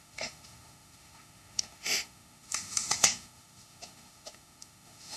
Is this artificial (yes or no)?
yes